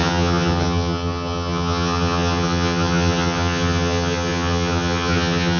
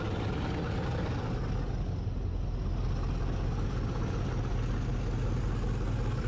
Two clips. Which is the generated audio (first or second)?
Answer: first